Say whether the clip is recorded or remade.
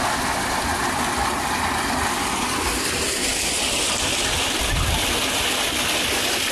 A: recorded